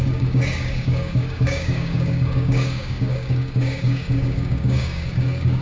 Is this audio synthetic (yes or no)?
yes